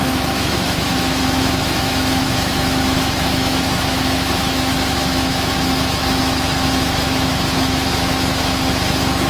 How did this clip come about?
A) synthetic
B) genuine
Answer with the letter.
A